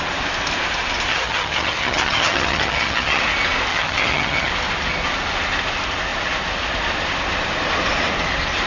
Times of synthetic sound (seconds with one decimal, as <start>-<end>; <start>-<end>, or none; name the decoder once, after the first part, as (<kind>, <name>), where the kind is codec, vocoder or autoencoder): 1.1-3.2 (vocoder, HiFi-GAN); 3.7-4.5